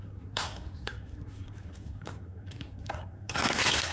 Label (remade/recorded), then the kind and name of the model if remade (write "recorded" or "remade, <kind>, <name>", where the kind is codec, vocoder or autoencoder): remade, codec, SNAC